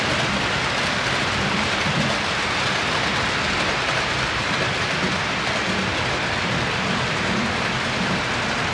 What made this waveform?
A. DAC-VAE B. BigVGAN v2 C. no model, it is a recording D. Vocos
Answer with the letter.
C